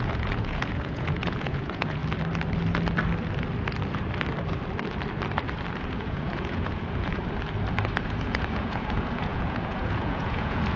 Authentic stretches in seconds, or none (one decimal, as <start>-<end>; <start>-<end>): 2.0-5.7; 7.2-8.0

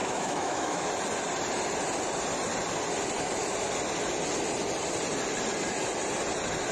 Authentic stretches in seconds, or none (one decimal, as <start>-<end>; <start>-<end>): 0.9-6.7

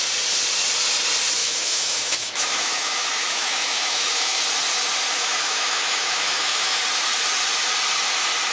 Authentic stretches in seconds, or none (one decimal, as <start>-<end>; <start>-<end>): 0.0-1.4; 4.4-5.2; 6.8-8.5

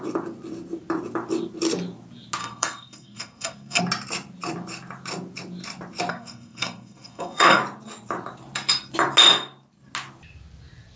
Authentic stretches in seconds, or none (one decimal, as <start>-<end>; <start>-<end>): 0.0-2.4; 3.8-6.1; 7.6-11.0